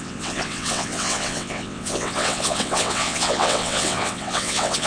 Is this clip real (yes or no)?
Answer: no